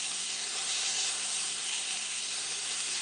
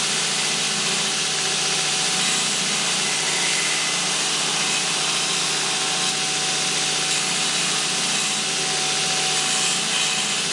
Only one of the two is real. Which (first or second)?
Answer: second